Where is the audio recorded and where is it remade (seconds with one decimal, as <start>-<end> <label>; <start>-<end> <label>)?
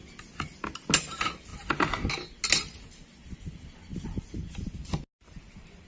0.0-5.9 recorded